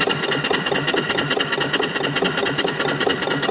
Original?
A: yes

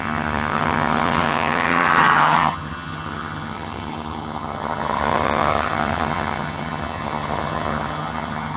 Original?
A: no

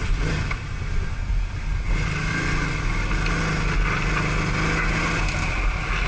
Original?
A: yes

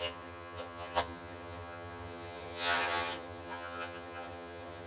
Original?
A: no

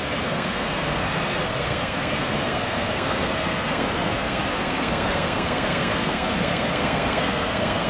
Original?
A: no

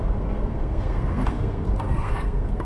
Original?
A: no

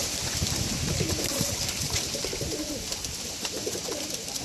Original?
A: no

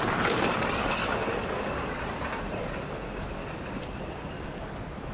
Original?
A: yes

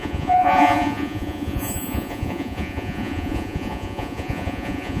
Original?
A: no